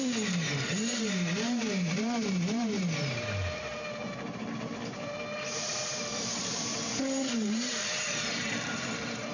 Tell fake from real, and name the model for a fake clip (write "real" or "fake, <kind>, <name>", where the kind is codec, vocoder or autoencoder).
fake, vocoder, BigVGAN v2